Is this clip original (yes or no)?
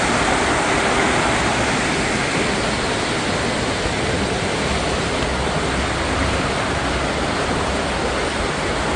yes